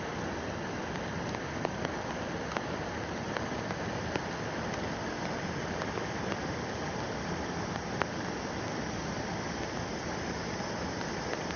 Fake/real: real